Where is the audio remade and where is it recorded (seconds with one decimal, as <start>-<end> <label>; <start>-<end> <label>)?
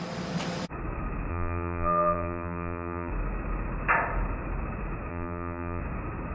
0.0-1.3 recorded; 1.3-3.1 remade; 3.1-5.1 recorded; 5.1-5.8 remade; 5.8-6.3 recorded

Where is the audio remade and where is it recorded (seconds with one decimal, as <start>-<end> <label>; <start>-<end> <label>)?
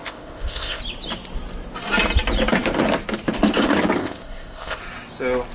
0.0-0.8 remade; 0.8-4.0 recorded; 4.0-4.8 remade; 4.8-5.5 recorded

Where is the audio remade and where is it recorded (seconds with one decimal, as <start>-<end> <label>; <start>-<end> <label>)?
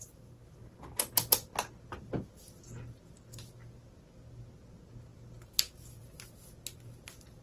0.0-5.1 recorded; 5.1-6.0 remade; 6.0-7.4 recorded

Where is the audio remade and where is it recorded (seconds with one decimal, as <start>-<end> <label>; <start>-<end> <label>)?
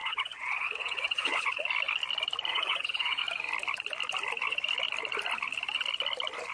0.0-1.6 remade; 1.6-2.5 recorded; 2.5-3.2 remade; 3.2-6.5 recorded